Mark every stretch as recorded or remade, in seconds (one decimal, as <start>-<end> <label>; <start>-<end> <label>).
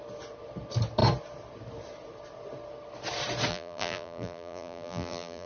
0.0-3.5 recorded; 3.5-5.5 remade